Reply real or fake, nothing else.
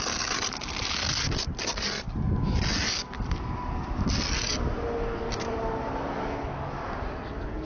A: real